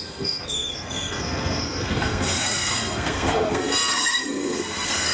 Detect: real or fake fake